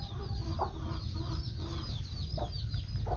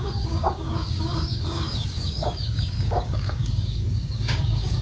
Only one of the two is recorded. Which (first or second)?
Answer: first